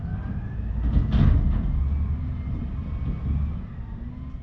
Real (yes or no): yes